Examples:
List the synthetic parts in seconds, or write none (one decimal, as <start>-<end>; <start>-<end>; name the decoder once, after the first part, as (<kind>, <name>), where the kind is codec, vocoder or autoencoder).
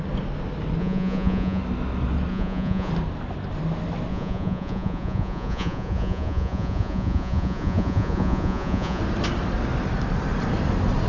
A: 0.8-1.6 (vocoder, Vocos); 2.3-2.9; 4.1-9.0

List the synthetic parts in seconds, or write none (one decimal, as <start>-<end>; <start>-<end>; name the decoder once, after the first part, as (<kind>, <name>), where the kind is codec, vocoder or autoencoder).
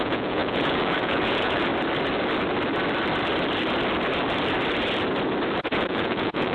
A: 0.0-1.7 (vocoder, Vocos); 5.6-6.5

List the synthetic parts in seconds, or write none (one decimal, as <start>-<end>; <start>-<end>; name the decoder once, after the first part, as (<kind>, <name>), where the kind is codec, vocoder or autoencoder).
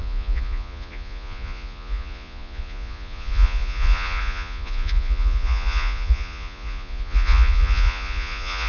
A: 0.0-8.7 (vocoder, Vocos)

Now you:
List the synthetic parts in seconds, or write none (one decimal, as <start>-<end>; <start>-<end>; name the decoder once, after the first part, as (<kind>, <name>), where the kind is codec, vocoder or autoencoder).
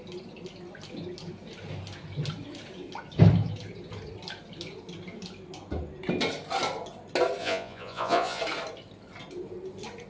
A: 7.4-8.4 (vocoder, Vocos)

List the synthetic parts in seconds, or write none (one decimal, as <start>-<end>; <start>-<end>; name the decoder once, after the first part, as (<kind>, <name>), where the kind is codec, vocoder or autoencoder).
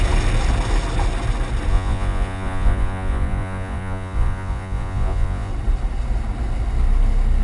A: 1.7-5.5 (vocoder, Vocos)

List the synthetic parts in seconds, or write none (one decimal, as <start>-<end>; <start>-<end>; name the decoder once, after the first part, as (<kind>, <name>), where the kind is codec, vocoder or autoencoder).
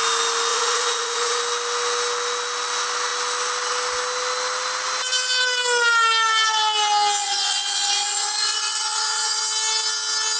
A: 0.5-1.4 (vocoder, Vocos); 7.2-9.4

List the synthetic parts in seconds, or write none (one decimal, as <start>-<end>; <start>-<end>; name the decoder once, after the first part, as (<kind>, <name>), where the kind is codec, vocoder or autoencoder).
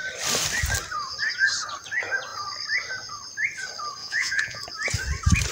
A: 4.0-4.6 (vocoder, Vocos)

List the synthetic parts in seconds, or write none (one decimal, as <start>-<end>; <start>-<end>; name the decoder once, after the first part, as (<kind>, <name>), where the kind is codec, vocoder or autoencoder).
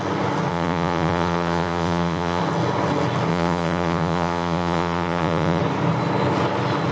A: 0.5-2.4 (vocoder, Vocos); 3.3-5.6